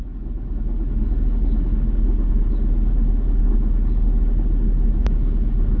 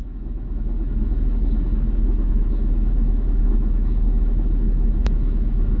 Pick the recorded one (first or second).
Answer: first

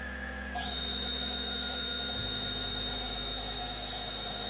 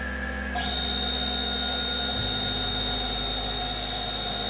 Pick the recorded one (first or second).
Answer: second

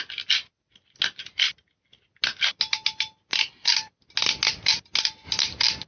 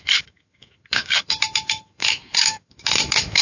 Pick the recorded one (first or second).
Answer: first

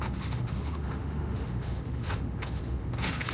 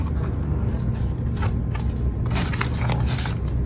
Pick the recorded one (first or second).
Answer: second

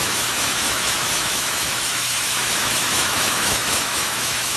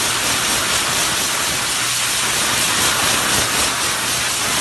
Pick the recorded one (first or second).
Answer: second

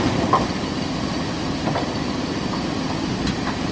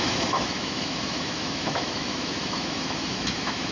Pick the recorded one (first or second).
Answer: first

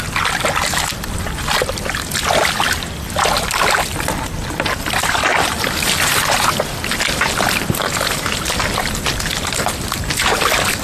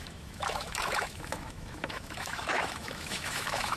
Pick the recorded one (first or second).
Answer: first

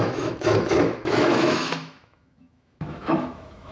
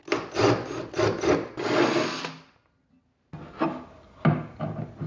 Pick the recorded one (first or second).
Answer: second